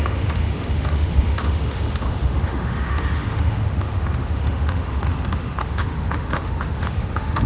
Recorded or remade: remade